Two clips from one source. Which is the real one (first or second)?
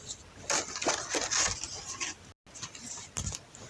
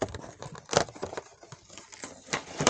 first